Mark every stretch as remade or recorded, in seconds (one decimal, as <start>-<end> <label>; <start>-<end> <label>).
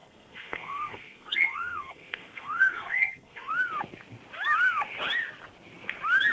0.0-3.5 remade; 3.5-6.3 recorded